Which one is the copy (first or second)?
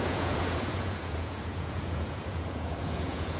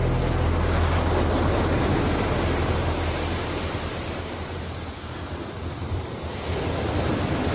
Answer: first